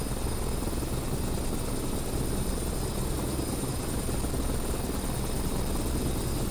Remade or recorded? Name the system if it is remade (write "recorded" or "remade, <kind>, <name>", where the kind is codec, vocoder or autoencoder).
recorded